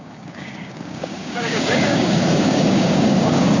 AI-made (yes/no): yes